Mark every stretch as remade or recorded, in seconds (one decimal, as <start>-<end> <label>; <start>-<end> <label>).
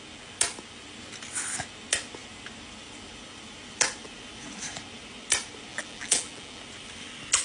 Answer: 0.0-5.7 recorded; 5.7-6.6 remade; 6.6-7.4 recorded